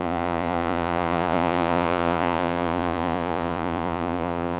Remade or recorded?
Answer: remade